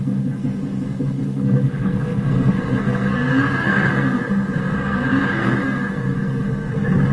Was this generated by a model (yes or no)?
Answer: yes